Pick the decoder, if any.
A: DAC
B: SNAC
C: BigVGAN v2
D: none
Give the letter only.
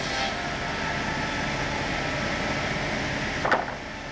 D